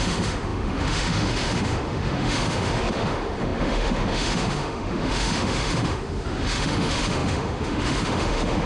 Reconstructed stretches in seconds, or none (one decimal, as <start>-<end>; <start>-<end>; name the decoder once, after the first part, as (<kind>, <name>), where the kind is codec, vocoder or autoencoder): 0.0-8.7 (autoencoder, DAC-VAE)